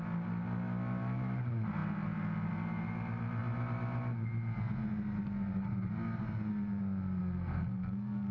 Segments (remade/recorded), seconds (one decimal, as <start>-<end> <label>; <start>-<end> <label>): 0.0-7.2 recorded; 7.2-8.3 remade